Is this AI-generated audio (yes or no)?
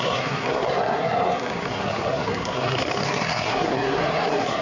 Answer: yes